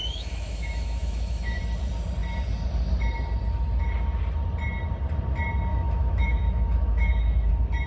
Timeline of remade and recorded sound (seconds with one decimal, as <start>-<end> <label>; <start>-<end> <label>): 0.0-1.6 remade; 1.6-5.7 recorded; 5.7-7.5 remade; 7.5-7.9 recorded